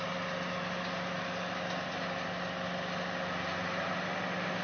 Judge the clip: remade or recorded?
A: recorded